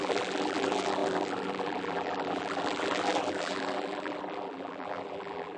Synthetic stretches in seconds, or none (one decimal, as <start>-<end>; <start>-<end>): 0.0-5.6